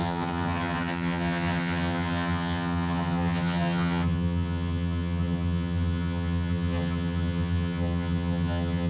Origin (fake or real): fake